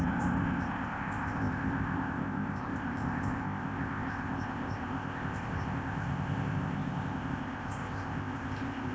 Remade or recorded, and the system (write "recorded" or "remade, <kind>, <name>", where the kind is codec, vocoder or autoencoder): remade, codec, ZipCodec